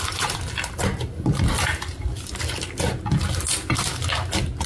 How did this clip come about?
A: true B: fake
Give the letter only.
A